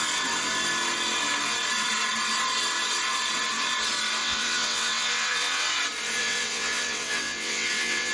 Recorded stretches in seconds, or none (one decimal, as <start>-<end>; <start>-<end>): 0.0-4.2; 5.8-6.2